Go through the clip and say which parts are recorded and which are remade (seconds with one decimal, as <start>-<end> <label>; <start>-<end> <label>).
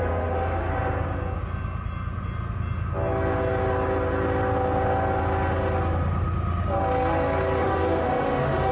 0.0-0.7 remade; 0.7-7.6 recorded; 7.6-8.7 remade